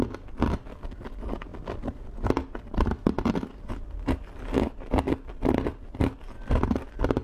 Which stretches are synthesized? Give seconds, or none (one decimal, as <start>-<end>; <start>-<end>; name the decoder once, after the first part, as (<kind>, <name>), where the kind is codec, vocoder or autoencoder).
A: none